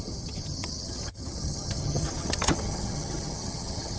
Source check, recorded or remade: remade